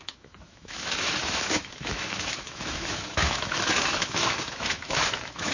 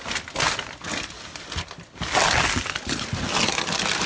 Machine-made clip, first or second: first